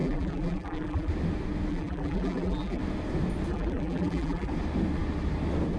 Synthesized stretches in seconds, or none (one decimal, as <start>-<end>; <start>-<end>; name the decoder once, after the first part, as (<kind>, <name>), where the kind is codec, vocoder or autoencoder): 0.0-1.1 (vocoder, BigVGAN v2); 1.7-2.8; 3.5-4.5